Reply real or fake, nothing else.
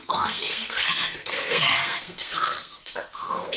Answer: fake